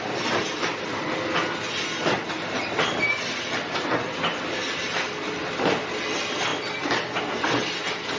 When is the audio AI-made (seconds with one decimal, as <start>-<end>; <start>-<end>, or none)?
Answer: none